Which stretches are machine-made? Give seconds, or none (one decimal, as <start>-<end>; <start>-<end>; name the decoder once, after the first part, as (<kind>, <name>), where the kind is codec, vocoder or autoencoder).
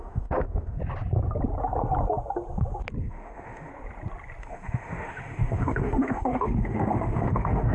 0.0-0.8 (autoencoder, DAC-VAE); 3.0-3.7; 4.4-7.7